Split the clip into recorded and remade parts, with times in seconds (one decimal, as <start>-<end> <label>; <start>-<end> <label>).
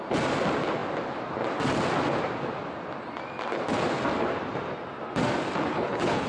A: 0.0-5.7 recorded; 5.7-6.3 remade